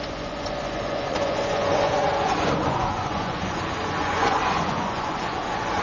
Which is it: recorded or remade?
remade